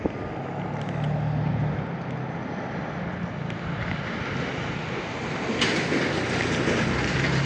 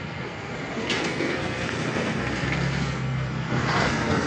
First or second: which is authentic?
first